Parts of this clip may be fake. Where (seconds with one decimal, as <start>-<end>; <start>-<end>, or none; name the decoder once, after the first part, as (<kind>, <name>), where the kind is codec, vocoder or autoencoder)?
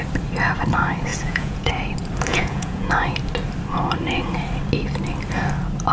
1.1-1.7 (vocoder, Vocos); 2.3-2.9